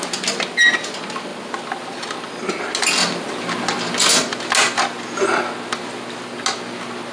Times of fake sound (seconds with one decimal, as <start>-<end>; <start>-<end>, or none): none